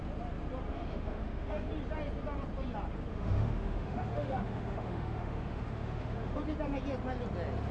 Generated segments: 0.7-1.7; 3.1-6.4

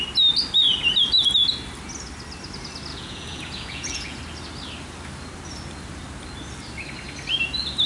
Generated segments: 2.9-4.2

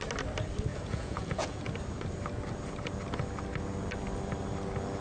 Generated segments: 0.7-1.6

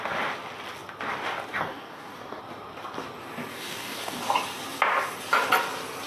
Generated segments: 1.5-2.4; 3.5-4.2

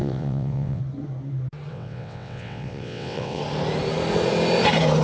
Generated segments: 0.0-0.8; 1.7-3.4

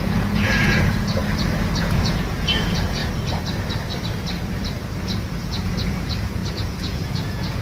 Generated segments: 0.0-1.2; 1.8-3.0; 5.4-7.6

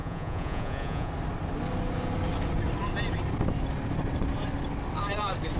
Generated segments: 0.0-1.1